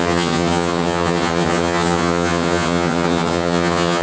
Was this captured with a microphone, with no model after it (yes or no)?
no